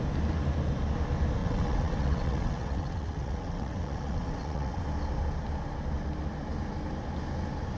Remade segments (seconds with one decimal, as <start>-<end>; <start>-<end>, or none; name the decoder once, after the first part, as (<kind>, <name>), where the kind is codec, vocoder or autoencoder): 1.4-4.8 (vocoder, WaveNeXt)